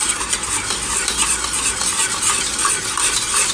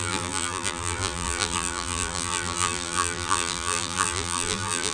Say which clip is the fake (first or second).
second